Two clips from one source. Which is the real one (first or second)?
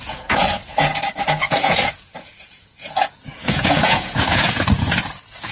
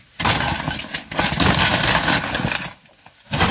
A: second